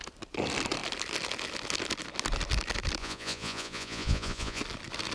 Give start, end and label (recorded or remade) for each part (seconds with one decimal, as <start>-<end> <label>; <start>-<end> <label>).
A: 0.0-3.0 recorded; 3.0-4.6 remade; 4.6-5.1 recorded